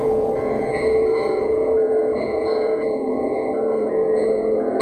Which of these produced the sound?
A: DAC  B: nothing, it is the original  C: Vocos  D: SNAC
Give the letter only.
C